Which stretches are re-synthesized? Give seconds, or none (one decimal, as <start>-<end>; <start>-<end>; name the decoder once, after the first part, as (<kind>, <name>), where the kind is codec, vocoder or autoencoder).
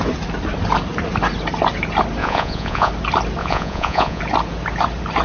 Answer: 2.2-2.9 (vocoder, Vocos); 3.4-4.2